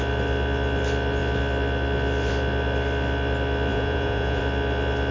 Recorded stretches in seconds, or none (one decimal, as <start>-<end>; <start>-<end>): 0.0-3.7; 4.4-5.1